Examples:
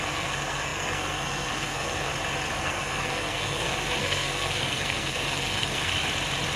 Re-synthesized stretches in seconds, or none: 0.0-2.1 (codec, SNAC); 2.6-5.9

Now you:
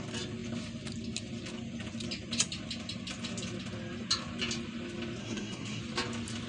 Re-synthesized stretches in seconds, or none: 5.2-5.8 (codec, SNAC)

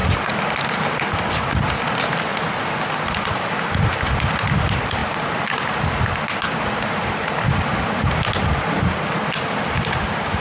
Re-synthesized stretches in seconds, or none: none

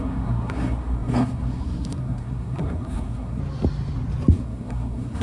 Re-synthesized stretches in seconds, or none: 0.0-3.4 (codec, SNAC); 4.3-5.2

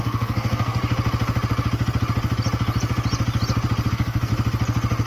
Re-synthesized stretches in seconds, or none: 0.0-0.8 (codec, SNAC); 3.9-4.3

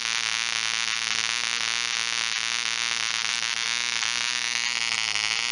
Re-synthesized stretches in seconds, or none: none

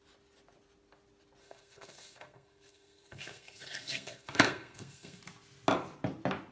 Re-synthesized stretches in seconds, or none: 1.4-5.2 (codec, SNAC)